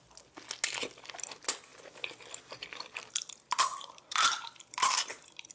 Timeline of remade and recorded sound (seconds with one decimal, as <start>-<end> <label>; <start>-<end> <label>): 0.0-3.7 recorded; 3.7-5.5 remade

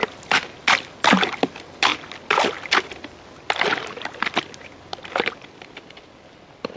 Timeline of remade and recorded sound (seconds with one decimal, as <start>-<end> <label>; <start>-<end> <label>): 0.0-6.8 recorded